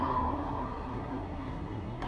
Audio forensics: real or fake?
fake